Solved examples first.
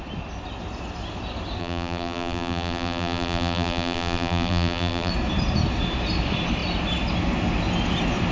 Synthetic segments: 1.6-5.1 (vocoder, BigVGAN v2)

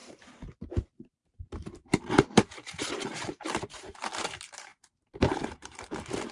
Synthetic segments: 0.6-6.3 (vocoder, BigVGAN v2)

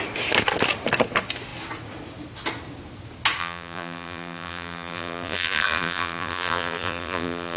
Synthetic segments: 3.4-7.6 (vocoder, BigVGAN v2)

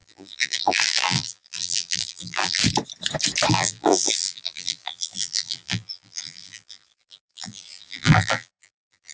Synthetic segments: 0.0-2.6 (vocoder, BigVGAN v2); 3.5-9.1

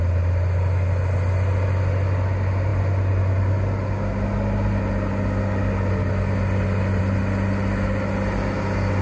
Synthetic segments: none

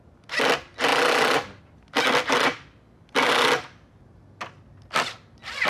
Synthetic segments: 0.9-1.6 (vocoder, BigVGAN v2); 2.2-3.3

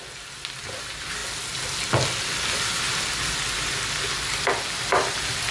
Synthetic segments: none

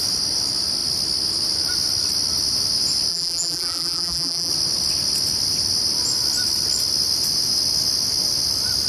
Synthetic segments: 3.1-4.5 (vocoder, BigVGAN v2)